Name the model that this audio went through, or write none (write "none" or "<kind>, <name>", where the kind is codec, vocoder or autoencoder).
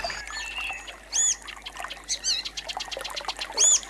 none